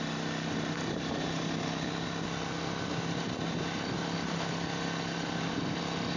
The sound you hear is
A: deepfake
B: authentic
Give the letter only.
B